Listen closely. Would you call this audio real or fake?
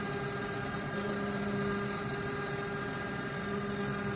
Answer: real